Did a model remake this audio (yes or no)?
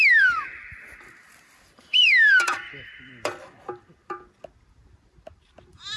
yes